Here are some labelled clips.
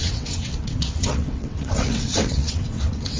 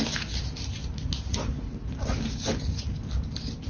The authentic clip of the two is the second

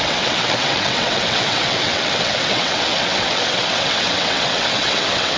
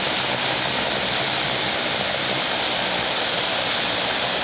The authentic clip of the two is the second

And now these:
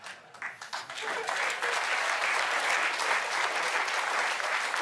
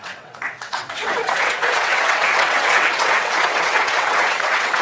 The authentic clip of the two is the first